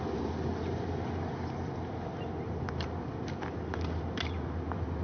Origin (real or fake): real